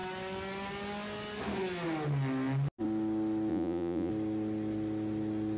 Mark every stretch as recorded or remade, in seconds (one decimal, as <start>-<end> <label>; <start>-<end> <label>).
0.0-3.5 recorded; 3.5-4.1 remade; 4.1-5.6 recorded